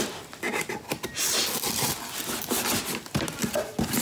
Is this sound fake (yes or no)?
no